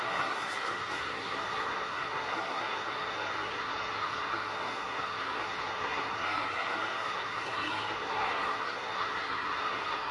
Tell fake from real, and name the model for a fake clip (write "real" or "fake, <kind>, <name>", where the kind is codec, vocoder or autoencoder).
fake, codec, SNAC